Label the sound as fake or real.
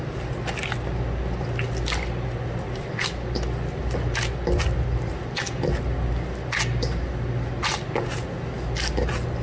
real